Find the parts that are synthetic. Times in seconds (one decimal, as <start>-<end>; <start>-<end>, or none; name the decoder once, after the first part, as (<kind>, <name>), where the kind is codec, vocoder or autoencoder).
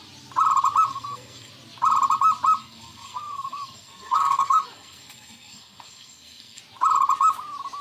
0.9-1.5 (codec, SNAC); 2.6-6.6